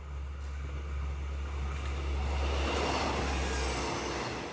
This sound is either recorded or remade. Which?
recorded